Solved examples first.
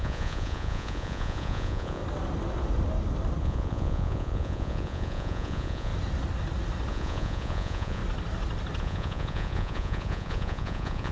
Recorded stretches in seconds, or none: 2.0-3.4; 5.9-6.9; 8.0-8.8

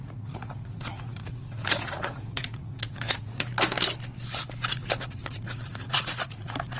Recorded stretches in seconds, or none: 3.5-4.7

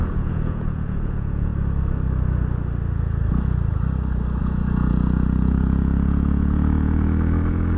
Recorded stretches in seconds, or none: 1.5-4.4